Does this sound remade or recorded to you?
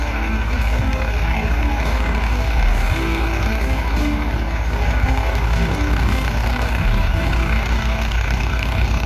remade